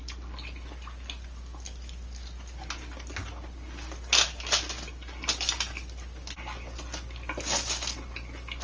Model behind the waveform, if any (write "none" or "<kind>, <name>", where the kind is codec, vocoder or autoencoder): none